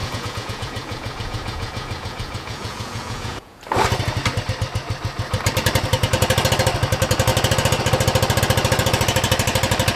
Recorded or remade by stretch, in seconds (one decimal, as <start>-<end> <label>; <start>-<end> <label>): 0.0-3.6 remade; 3.6-10.0 recorded

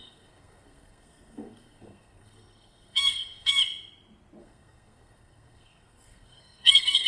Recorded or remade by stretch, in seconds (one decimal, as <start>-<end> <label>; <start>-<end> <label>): 0.0-3.6 remade; 3.6-4.4 recorded; 4.4-7.1 remade

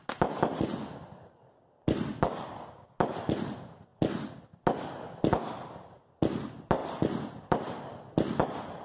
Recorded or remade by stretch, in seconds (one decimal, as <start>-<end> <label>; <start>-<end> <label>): 0.0-8.8 recorded

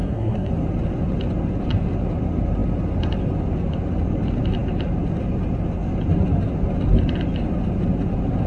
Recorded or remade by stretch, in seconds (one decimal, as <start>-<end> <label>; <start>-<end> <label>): 0.0-0.5 remade; 0.5-8.5 recorded

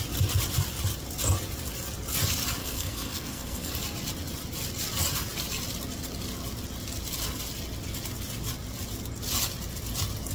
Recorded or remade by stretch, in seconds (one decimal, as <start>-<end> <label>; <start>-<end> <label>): 0.0-2.6 recorded; 2.6-3.7 remade; 3.7-10.3 recorded